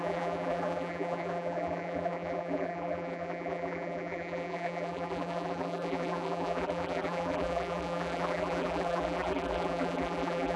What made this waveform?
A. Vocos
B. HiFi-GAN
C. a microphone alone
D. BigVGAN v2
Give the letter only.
D